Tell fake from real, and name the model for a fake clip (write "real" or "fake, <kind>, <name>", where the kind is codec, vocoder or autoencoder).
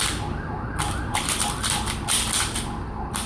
fake, vocoder, BigVGAN v2